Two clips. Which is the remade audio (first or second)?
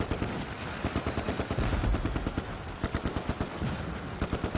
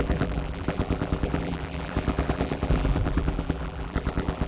second